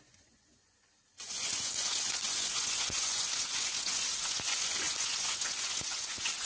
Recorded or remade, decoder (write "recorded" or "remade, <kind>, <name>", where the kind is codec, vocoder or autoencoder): remade, vocoder, Vocos